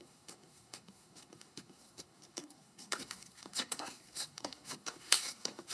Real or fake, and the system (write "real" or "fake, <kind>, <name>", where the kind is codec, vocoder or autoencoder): fake, codec, SNAC